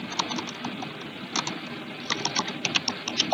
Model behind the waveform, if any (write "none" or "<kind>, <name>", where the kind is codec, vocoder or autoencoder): none